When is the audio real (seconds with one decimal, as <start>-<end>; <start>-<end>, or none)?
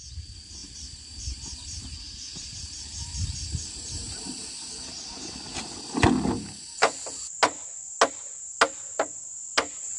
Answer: 0.0-0.6; 4.5-10.0